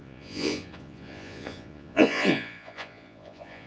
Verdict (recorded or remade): remade